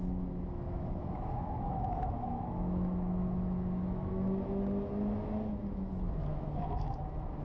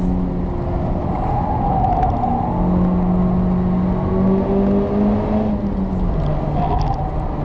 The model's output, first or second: first